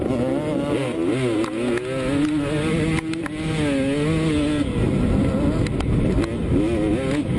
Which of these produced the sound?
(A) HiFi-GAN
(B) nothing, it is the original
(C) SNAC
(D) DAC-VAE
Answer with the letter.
B